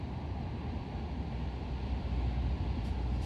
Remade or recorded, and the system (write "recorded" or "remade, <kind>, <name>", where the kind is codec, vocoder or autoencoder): remade, vocoder, BigVGAN v2